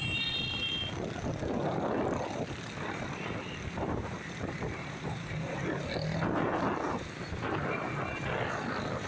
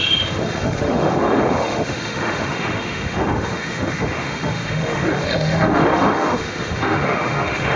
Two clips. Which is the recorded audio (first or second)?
first